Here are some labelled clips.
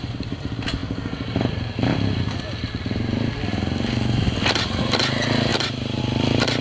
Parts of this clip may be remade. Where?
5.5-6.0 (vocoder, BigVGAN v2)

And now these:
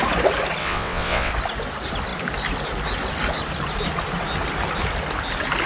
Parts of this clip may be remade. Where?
0.6-1.3 (vocoder, WaveNeXt)

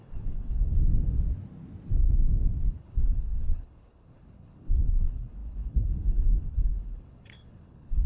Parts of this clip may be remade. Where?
0.0-0.9 (codec, HILCodec); 2.8-8.1

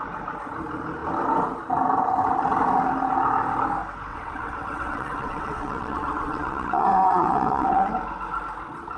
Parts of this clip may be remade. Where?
4.1-7.9 (vocoder, WaveNeXt)

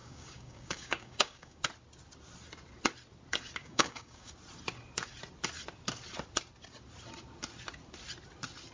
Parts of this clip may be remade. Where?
0.0-1.6 (codec, DAC); 3.6-4.3

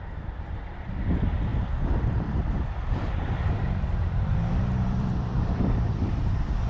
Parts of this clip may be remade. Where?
0.0-6.7 (vocoder, BigVGAN v2)